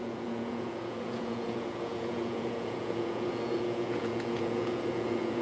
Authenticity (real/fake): fake